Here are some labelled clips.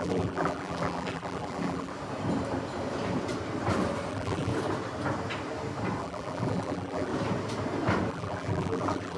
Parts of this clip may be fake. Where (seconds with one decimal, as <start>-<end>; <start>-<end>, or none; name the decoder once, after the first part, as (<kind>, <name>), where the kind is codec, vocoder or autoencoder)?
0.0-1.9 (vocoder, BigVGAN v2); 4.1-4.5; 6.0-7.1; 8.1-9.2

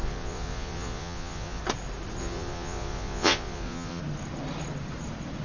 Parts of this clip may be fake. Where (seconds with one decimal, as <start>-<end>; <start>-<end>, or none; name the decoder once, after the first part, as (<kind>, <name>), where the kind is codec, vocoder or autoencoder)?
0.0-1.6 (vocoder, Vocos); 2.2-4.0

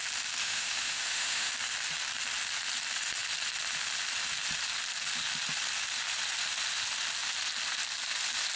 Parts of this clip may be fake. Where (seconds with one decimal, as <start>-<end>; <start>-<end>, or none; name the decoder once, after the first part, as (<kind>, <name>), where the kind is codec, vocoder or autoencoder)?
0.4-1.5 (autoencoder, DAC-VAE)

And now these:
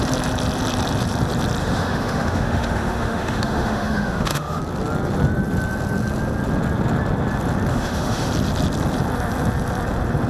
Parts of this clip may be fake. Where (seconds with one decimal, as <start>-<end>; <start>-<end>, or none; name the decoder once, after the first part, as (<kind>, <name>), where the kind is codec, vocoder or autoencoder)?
1.6-4.6 (autoencoder, DAC-VAE); 7.7-8.3

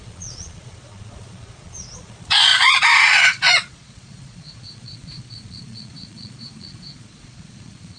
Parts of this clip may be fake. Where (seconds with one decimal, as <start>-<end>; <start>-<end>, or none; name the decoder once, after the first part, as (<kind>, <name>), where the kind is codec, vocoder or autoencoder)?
0.0-8.0 (vocoder, Vocos)